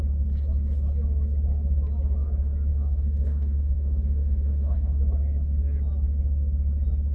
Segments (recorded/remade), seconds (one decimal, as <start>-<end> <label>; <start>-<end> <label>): 0.0-2.7 recorded; 2.7-5.0 remade; 5.0-7.1 recorded